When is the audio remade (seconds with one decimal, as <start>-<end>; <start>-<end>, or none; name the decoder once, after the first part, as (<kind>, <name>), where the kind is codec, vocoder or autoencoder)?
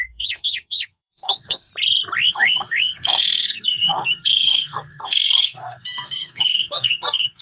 0.0-1.7 (codec, SNAC); 2.3-7.4